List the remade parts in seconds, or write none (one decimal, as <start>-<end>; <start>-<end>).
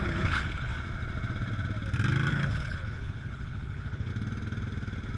0.0-0.7; 2.3-4.1